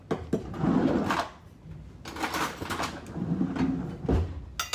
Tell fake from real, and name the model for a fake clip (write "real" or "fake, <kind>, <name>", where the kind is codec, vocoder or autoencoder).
real